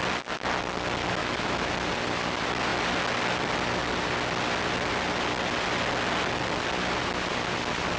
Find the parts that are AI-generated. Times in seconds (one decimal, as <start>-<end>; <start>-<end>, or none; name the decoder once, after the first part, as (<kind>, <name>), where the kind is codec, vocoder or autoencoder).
1.2-1.7 (autoencoder, DAC-VAE)